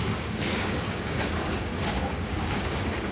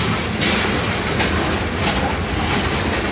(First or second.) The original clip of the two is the second